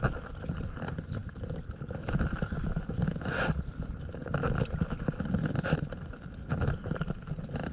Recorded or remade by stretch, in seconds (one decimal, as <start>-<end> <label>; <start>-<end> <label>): 0.0-7.7 recorded